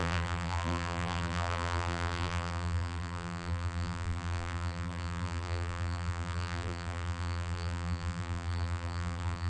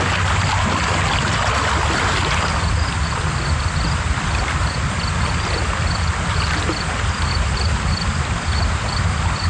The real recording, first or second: second